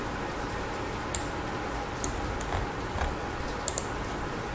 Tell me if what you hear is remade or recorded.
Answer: recorded